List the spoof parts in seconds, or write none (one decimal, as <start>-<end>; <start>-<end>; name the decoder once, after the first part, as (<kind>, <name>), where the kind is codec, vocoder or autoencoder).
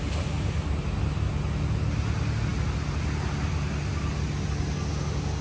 none